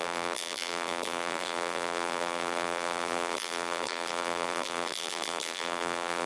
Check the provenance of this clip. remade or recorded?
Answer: remade